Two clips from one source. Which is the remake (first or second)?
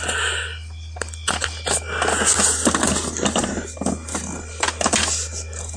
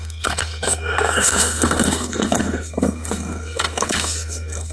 second